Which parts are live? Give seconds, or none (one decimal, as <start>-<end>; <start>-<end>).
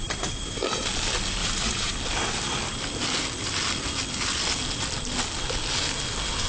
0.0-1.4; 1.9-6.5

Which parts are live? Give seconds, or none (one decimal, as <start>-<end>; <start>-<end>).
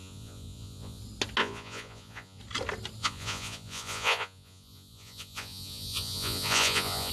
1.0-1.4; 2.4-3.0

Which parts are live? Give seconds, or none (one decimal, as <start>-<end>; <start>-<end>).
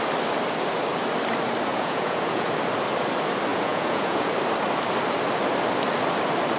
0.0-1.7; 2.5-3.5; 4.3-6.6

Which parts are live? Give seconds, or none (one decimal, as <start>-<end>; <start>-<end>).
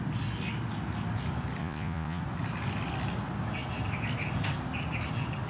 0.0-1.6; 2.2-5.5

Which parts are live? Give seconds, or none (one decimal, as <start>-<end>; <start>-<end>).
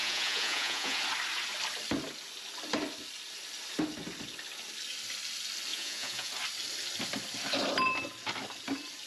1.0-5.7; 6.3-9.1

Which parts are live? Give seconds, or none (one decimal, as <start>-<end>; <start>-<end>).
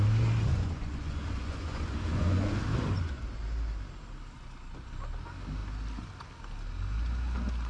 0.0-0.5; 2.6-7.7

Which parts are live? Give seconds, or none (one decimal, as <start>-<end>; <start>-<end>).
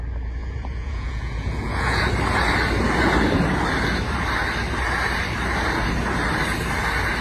0.0-0.4; 2.1-7.2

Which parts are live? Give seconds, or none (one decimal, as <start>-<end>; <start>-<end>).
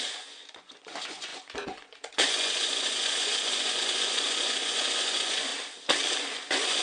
5.5-6.2